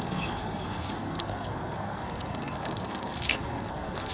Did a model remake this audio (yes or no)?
yes